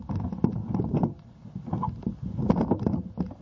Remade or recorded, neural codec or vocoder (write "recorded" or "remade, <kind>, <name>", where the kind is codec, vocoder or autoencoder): recorded